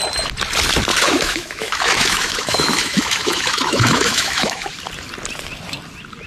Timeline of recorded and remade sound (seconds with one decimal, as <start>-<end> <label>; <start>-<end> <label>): 0.0-0.9 recorded; 0.9-4.7 remade; 4.7-6.3 recorded